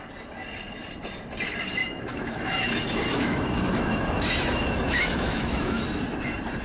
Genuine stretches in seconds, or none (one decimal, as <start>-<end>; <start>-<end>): 0.0-1.8; 5.8-6.6